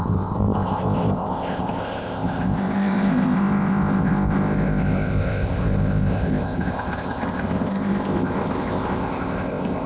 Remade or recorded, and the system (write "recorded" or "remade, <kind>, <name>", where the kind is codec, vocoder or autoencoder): remade, codec, ZipCodec